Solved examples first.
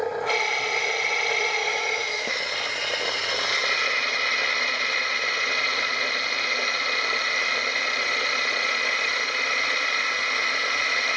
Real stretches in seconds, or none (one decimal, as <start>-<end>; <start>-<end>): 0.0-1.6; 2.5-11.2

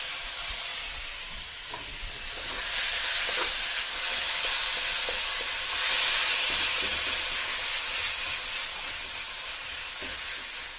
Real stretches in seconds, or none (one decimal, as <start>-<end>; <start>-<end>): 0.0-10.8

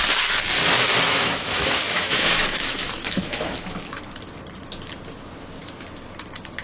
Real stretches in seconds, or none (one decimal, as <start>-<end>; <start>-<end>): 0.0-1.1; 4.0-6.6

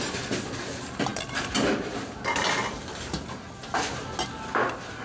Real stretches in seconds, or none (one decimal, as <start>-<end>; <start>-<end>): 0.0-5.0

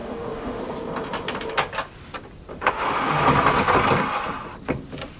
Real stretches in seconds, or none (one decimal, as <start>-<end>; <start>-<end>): 0.6-2.5; 3.2-5.2

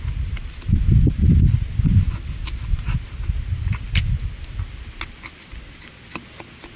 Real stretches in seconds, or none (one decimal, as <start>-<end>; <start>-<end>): 0.0-6.8

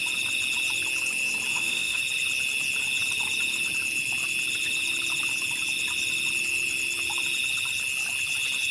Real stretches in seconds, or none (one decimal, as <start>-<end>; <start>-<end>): 0.0-1.5; 2.0-8.7

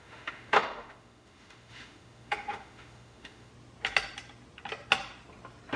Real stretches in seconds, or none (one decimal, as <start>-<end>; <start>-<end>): 3.5-5.8